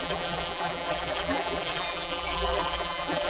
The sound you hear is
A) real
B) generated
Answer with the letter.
B